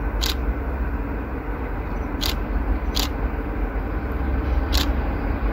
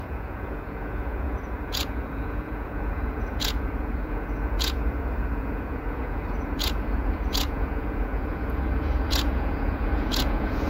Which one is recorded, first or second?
first